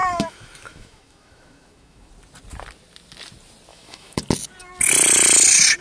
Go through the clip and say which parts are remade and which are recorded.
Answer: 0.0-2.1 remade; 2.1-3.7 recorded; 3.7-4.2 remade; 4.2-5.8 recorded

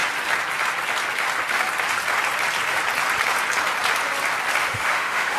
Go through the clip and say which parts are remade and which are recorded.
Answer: 0.0-4.6 recorded; 4.6-5.4 remade